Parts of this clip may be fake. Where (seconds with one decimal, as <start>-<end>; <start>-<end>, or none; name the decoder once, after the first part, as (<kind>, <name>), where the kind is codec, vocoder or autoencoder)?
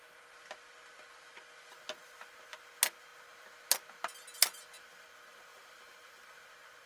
5.5-6.2 (vocoder, BigVGAN v2)